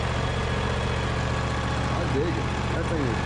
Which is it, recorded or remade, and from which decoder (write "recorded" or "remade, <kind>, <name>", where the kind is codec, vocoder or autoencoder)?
recorded